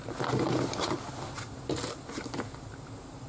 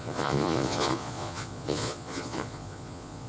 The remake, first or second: second